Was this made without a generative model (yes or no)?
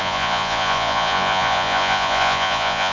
no